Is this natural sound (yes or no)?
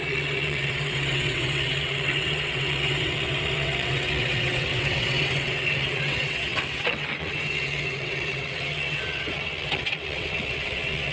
no